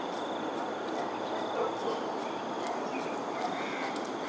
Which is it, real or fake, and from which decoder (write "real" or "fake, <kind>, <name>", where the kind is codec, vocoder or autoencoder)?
real